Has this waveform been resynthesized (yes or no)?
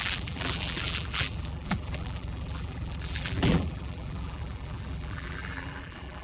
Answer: yes